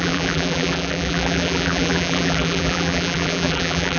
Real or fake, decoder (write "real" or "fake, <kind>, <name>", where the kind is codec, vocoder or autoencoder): fake, vocoder, BigVGAN v2